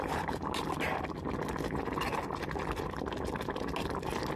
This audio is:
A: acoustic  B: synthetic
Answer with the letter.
A